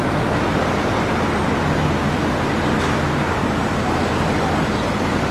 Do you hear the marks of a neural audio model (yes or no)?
no